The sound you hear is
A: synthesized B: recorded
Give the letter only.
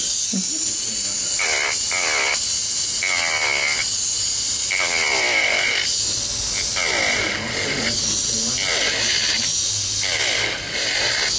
B